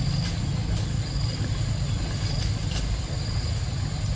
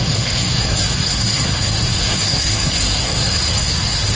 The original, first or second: first